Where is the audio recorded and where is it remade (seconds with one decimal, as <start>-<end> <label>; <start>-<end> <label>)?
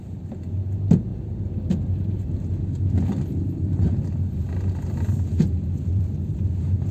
0.0-5.3 recorded; 5.3-6.1 remade; 6.1-6.9 recorded